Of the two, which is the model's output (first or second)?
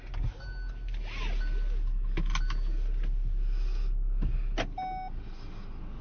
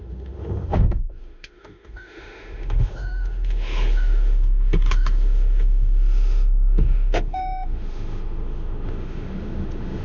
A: second